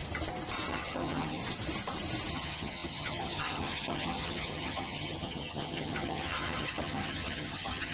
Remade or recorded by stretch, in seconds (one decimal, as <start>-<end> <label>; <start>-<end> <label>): 0.0-0.7 recorded; 0.7-1.4 remade; 1.4-2.3 recorded; 2.3-7.9 remade